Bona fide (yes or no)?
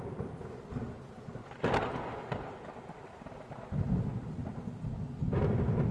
yes